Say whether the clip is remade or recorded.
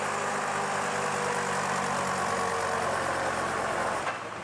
recorded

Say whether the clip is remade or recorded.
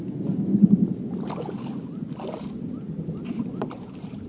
recorded